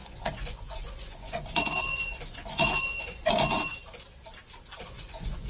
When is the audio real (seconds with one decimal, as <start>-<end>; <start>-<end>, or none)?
3.8-4.8